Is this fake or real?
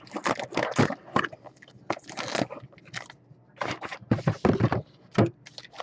real